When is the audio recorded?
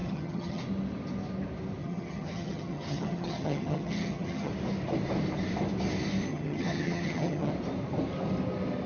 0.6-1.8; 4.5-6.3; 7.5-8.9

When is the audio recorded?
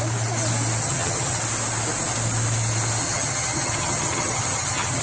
0.0-0.8; 1.4-3.0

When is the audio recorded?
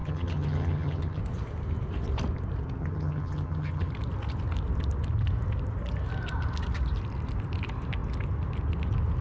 1.2-2.8; 3.9-9.2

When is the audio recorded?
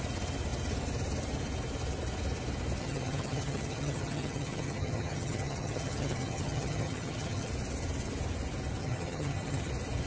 0.0-2.8; 7.5-8.8; 9.7-10.1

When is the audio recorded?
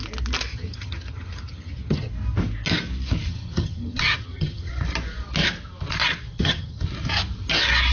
0.0-0.5; 2.1-3.3; 4.7-6.3; 6.8-7.9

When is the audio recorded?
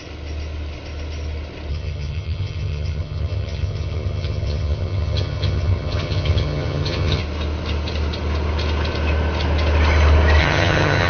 0.0-1.7; 7.2-10.4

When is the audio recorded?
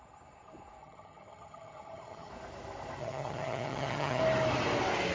0.0-0.8; 2.3-3.0; 4.2-5.1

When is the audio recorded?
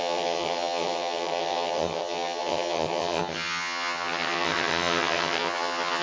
none